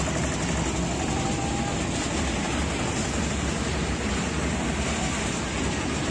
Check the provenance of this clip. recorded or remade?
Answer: recorded